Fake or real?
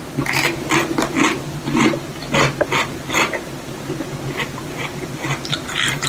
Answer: real